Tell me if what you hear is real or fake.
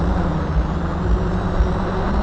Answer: real